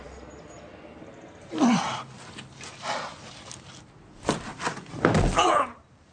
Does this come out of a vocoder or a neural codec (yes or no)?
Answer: yes